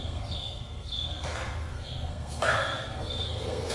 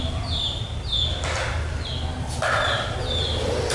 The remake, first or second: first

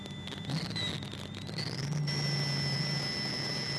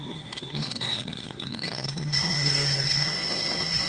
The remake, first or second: second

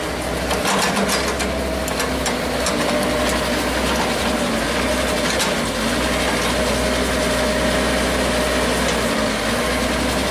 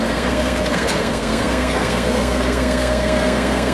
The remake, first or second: second